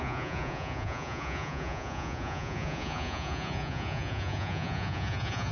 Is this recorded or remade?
remade